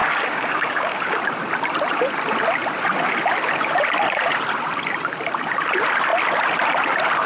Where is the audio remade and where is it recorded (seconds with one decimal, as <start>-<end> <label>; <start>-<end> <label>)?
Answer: 0.0-1.2 remade; 1.2-7.3 recorded